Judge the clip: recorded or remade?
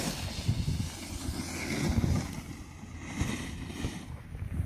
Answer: recorded